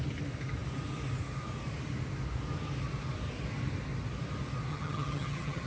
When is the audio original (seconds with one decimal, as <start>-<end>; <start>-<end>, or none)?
0.0-4.7